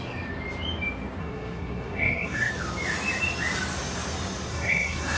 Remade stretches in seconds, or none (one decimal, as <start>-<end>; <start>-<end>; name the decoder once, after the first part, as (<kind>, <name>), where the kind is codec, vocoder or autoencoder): 1.2-2.5 (codec, SNAC); 4.5-5.2

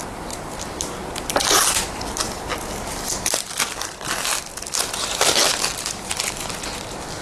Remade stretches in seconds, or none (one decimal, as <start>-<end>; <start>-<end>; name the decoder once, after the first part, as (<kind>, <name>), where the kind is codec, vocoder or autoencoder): none

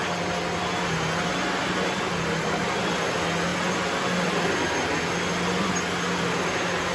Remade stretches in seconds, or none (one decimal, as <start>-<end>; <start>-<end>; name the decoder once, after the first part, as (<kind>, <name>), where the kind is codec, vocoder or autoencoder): none

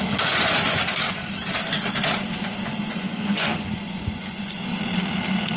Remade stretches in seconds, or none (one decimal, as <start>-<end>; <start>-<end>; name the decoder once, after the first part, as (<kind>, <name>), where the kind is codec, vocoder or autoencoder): 0.0-1.2 (vocoder, Vocos); 2.3-4.7